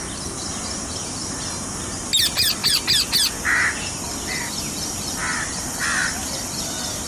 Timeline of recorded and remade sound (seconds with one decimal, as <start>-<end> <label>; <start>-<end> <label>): 0.0-7.1 recorded